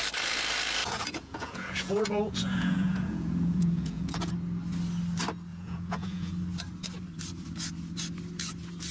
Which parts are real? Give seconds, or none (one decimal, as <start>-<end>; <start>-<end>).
0.0-0.8; 4.3-5.5; 6.3-8.9